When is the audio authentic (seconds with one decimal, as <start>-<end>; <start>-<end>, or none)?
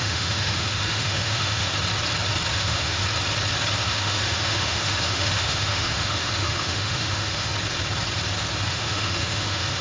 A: 1.7-2.5; 3.0-3.8; 7.5-8.7